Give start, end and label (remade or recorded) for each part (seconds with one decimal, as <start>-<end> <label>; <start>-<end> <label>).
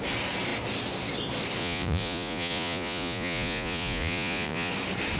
0.0-1.6 recorded; 1.6-4.7 remade; 4.7-5.2 recorded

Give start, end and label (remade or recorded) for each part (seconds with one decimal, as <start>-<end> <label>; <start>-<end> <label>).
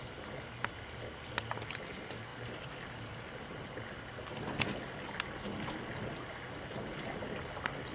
0.0-7.9 recorded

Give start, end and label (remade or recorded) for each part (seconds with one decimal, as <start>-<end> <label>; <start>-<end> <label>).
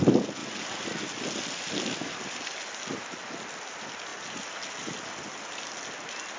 0.0-6.4 recorded